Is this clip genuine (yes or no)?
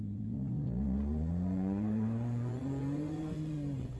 no